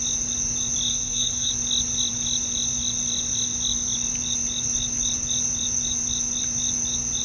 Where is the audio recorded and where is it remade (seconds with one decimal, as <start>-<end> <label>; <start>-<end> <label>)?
0.0-0.9 recorded; 0.9-1.5 remade; 1.5-7.2 recorded